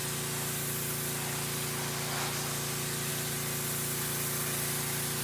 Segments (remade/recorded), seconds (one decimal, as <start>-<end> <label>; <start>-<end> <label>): 0.0-5.2 recorded

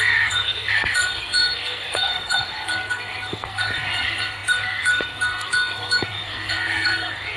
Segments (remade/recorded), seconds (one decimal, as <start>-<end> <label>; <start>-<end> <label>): 0.0-7.4 remade